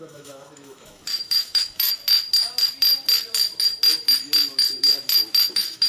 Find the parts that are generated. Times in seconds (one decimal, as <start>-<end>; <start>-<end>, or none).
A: 0.0-2.0; 5.5-5.9